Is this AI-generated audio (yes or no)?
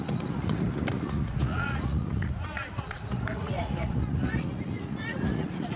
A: yes